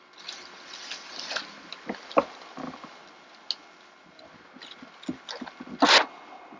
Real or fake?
real